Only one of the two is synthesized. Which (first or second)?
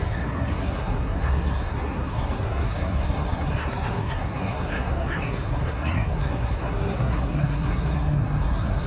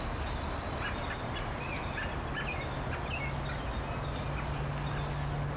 first